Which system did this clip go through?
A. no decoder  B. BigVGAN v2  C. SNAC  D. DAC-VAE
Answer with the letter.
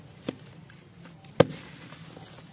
A